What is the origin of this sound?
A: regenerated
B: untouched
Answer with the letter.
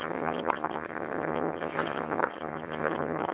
A